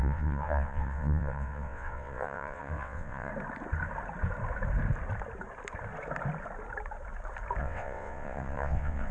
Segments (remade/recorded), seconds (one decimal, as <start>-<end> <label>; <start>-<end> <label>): 0.0-3.3 remade; 3.3-7.6 recorded; 7.6-9.1 remade